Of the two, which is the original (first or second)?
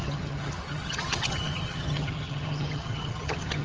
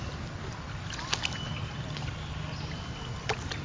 second